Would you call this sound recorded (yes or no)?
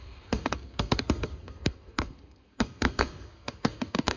no